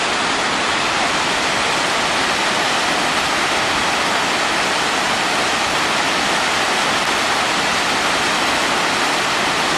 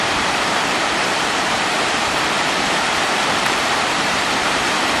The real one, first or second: first